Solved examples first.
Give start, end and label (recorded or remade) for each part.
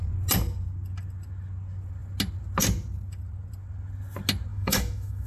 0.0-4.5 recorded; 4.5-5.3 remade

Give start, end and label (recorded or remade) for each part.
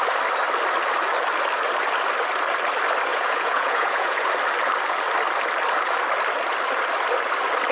0.0-3.1 recorded; 3.1-4.3 remade; 4.3-7.7 recorded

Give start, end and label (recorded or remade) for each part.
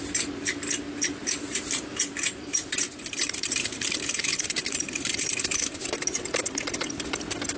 0.0-1.2 recorded; 1.2-5.8 remade; 5.8-7.6 recorded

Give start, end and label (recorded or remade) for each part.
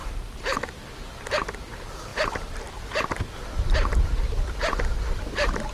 0.0-5.7 recorded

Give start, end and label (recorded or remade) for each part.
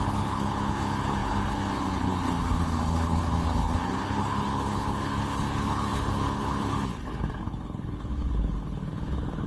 0.0-9.5 remade